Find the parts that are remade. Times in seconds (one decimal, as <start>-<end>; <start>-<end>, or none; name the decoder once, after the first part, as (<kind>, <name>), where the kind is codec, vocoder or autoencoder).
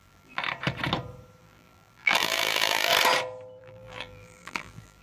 0.0-0.4 (vocoder, BigVGAN v2); 1.4-2.9; 3.6-5.0